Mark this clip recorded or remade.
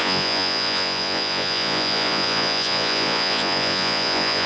remade